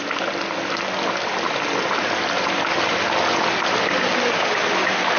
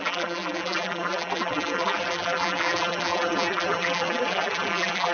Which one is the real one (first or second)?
first